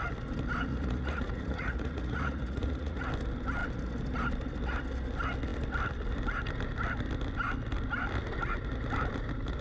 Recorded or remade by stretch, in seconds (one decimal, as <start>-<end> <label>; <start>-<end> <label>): 0.0-0.7 recorded; 0.7-3.1 remade; 3.1-9.6 recorded